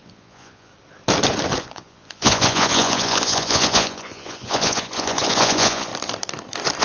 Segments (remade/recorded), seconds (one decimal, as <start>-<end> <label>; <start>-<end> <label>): 0.0-0.7 remade; 0.7-1.6 recorded; 1.6-5.9 remade; 5.9-6.8 recorded